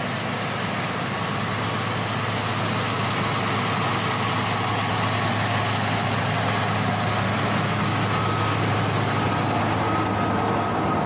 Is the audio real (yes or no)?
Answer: yes